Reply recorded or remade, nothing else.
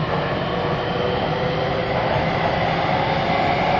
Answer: recorded